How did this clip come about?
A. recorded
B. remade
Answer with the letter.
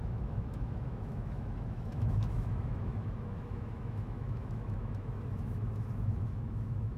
B